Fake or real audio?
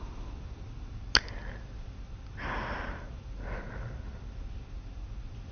real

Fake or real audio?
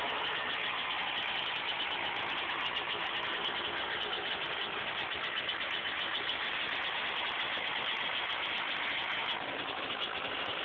real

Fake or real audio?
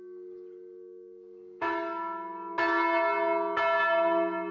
real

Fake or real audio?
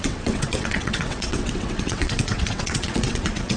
fake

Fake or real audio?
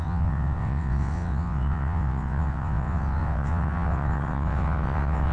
fake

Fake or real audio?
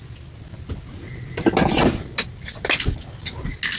real